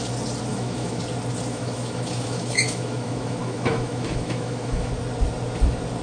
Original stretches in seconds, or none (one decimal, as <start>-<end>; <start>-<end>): 0.0-0.5; 1.0-1.5; 4.9-6.0